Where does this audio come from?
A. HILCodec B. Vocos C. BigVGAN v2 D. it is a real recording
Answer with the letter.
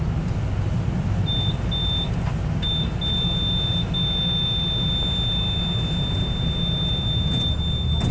D